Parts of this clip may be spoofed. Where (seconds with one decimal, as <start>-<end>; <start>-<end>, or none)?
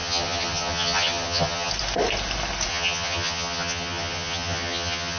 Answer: 0.0-1.7; 2.7-5.2